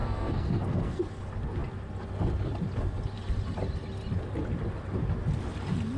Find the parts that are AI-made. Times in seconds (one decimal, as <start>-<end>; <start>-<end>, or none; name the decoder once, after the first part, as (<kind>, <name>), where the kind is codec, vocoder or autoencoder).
0.0-1.0 (codec, SNAC)